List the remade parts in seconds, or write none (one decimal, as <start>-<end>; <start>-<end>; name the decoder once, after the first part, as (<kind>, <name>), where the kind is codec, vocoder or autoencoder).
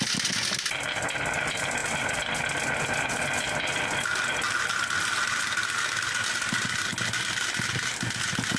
none